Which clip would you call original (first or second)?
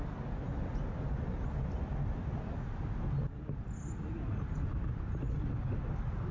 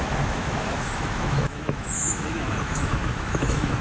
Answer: first